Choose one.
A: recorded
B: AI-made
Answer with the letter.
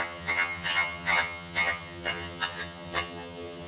B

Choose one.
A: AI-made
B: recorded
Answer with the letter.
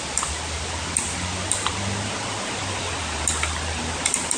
B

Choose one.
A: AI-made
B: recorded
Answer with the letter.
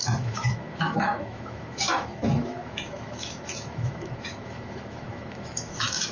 A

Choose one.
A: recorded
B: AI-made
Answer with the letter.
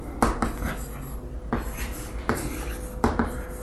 A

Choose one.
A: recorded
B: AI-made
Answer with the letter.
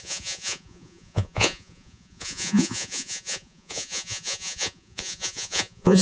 B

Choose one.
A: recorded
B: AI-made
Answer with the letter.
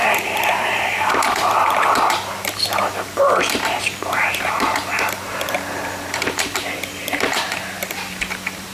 B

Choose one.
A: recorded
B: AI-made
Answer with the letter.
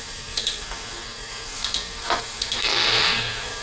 B